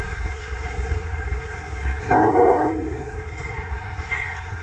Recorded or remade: remade